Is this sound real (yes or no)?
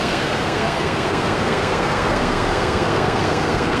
no